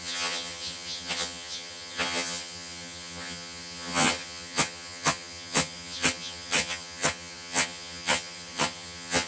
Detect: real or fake fake